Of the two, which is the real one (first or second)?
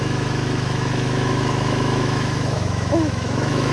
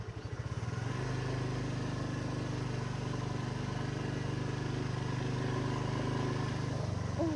second